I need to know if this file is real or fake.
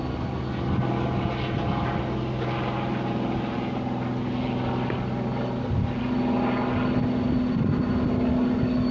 real